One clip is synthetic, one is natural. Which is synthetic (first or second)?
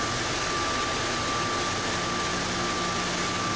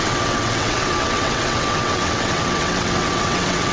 second